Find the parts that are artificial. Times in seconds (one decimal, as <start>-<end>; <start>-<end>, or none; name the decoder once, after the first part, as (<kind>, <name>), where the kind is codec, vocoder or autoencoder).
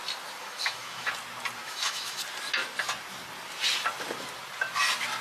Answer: 0.4-1.1 (autoencoder, DAC-VAE); 1.6-2.2